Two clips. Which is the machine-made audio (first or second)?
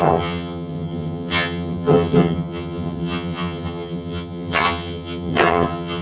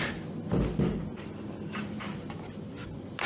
first